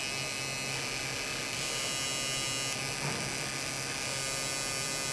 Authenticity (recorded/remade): recorded